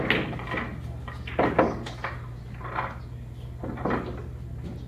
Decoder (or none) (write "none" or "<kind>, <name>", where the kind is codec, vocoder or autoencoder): none